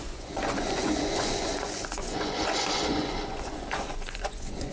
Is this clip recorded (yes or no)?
no